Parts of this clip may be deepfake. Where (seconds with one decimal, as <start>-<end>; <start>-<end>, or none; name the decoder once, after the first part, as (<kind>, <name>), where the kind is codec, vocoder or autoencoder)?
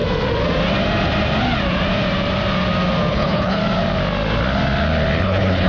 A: 3.1-3.6 (codec, HILCodec); 5.2-5.7